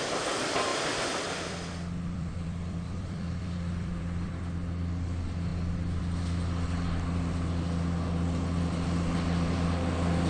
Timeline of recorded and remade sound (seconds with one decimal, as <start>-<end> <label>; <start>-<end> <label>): 0.0-0.7 recorded; 0.7-4.3 remade; 4.3-10.3 recorded